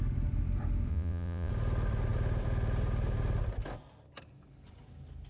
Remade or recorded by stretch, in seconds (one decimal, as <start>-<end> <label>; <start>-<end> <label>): 0.0-0.9 recorded; 0.9-1.5 remade; 1.5-5.3 recorded